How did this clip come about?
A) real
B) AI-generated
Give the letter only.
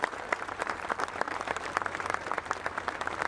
B